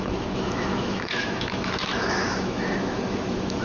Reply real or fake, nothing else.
fake